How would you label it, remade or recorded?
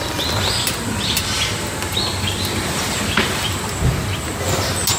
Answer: recorded